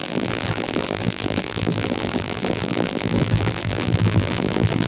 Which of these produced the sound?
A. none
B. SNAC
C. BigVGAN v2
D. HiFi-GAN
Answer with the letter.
C